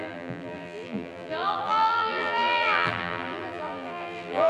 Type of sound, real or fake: fake